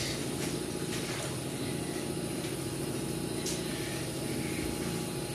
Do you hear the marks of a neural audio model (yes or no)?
no